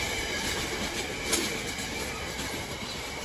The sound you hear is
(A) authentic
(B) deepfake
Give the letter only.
A